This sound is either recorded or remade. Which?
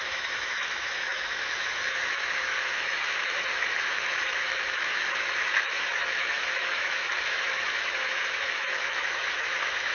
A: remade